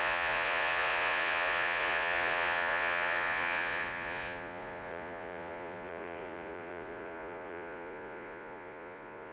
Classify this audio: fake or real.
fake